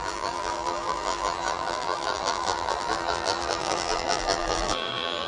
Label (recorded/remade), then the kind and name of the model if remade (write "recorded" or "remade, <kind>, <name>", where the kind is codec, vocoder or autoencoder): remade, vocoder, BigVGAN v2